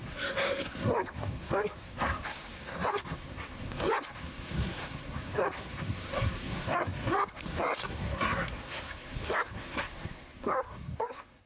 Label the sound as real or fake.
fake